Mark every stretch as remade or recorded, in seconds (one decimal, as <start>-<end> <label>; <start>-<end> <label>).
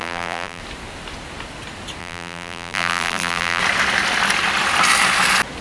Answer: 0.0-0.6 remade; 0.6-2.0 recorded; 2.0-3.6 remade; 3.6-5.6 recorded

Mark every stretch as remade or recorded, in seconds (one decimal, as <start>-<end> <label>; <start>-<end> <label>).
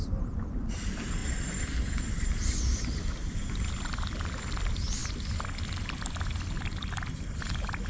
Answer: 0.0-1.2 recorded; 1.2-3.1 remade; 3.1-7.9 recorded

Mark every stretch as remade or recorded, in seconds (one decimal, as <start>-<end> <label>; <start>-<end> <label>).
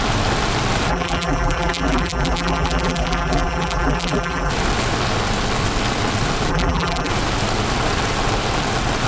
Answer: 0.0-0.9 recorded; 0.9-4.5 remade; 4.5-6.5 recorded; 6.5-7.1 remade; 7.1-9.1 recorded